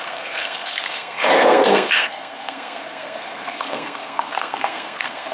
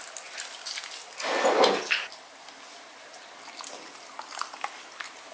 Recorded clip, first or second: second